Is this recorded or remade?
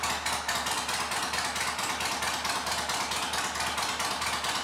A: recorded